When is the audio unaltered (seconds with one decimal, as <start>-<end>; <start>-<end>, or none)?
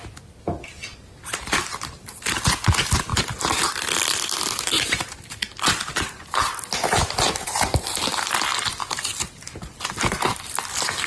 0.0-11.1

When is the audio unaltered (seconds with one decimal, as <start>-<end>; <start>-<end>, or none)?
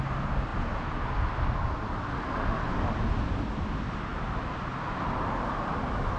0.0-6.2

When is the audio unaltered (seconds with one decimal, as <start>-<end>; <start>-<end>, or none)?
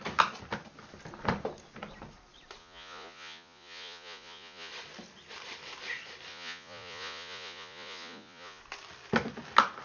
0.0-2.6; 4.7-6.3; 8.6-9.8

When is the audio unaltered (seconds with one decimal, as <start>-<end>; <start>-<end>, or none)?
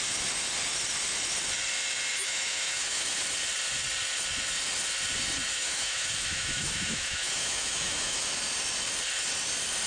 0.0-2.1; 3.1-5.5; 8.3-9.9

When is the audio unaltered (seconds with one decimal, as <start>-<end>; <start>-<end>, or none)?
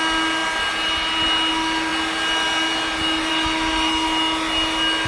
0.0-5.1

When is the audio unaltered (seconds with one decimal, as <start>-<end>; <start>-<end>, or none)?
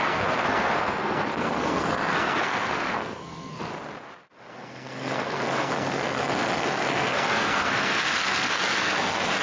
3.7-4.5